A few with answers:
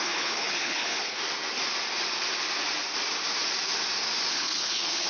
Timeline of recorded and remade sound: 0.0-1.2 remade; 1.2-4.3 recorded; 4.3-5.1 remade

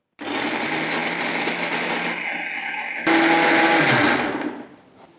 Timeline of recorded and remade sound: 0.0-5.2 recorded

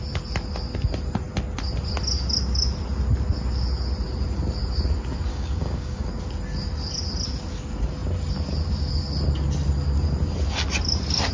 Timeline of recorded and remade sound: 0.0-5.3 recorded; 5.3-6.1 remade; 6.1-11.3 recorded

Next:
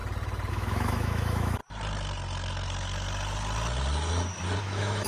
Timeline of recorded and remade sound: 0.0-0.5 recorded; 0.5-1.6 remade; 1.6-4.6 recorded; 4.6-5.1 remade